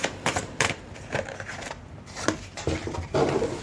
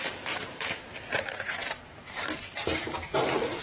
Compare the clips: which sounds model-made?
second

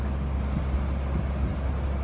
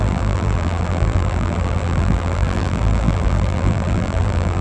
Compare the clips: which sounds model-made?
second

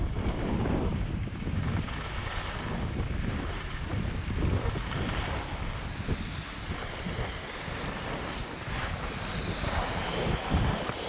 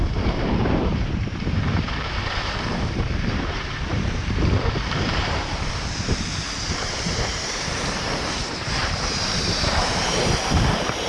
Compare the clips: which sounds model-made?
second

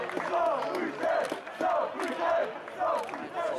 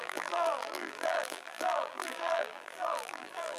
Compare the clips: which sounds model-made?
second